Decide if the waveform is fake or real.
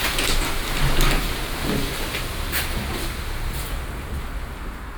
real